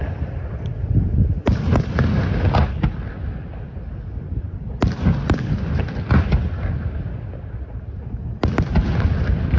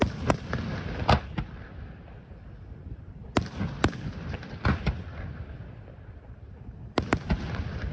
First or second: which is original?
first